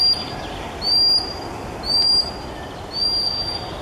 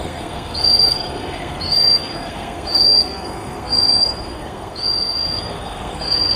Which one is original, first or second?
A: first